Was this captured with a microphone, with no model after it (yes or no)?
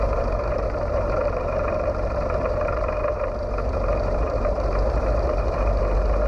no